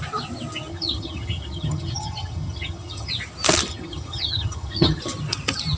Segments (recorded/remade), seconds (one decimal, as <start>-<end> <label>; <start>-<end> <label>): 0.0-0.7 recorded; 0.7-3.1 remade; 3.1-3.7 recorded; 3.7-5.0 remade; 5.0-5.8 recorded